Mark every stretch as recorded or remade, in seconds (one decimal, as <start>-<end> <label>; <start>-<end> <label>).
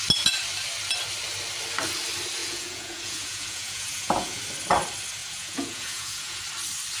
0.0-2.4 recorded; 2.4-4.4 remade; 4.4-5.2 recorded; 5.2-6.4 remade; 6.4-7.0 recorded